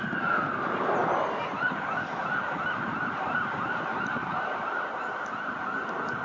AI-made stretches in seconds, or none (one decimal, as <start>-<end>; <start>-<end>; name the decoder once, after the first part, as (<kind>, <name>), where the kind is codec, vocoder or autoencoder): none